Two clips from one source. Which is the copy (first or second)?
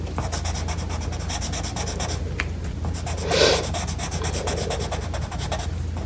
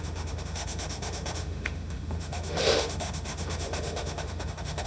second